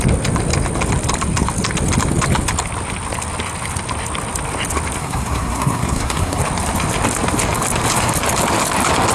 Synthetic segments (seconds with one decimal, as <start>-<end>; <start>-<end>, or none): 5.0-6.4